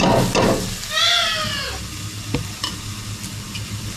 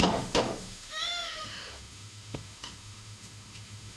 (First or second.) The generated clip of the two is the second